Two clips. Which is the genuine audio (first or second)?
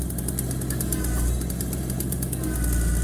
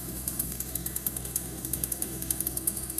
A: first